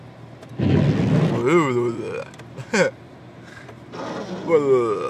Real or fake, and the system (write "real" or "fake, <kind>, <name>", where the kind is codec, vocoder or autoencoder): real